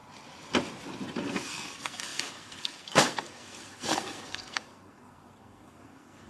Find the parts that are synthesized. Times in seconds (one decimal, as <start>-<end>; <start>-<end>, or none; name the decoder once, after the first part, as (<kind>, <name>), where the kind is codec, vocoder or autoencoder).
1.2-6.3 (codec, SNAC)